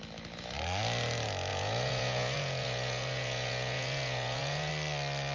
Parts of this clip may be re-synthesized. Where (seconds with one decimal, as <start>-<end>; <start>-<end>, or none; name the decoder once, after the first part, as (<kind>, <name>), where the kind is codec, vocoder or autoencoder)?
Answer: 1.5-4.7 (vocoder, Vocos)